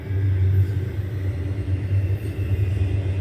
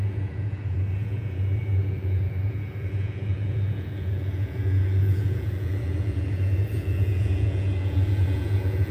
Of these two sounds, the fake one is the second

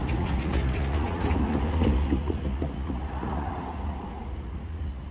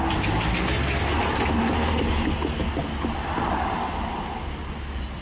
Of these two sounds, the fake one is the first